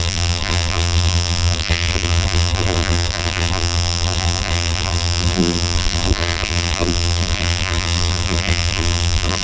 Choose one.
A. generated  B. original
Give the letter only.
A